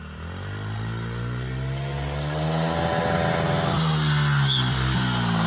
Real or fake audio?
real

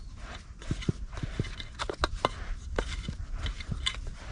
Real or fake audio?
real